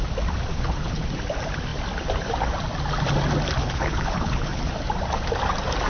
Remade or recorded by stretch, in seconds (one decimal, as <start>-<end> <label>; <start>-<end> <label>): 0.0-0.5 recorded; 0.5-1.1 remade; 1.1-3.6 recorded; 3.6-4.6 remade; 4.6-5.9 recorded